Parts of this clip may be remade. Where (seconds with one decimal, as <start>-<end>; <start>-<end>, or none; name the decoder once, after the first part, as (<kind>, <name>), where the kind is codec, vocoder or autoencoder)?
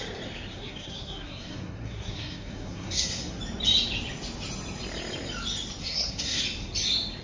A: 0.5-3.4 (codec, SNAC); 5.8-6.4